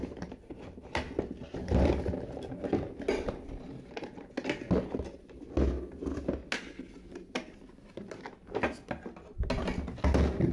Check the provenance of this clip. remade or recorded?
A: recorded